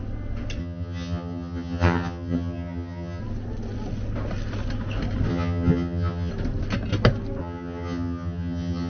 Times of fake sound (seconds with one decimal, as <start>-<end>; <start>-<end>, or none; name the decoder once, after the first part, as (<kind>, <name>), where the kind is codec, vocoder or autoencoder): 0.6-3.2 (vocoder, HiFi-GAN); 5.3-6.3; 7.4-8.9